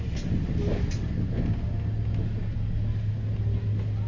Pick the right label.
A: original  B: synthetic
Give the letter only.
A